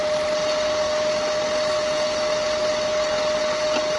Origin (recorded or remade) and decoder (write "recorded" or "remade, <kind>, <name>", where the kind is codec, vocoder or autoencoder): recorded